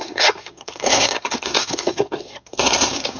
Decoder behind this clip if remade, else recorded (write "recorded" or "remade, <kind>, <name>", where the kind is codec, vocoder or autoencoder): remade, codec, SNAC